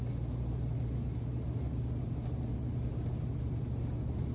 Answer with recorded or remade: recorded